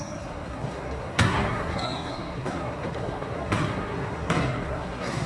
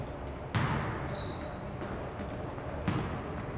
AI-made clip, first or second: first